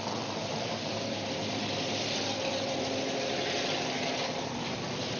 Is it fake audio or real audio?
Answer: real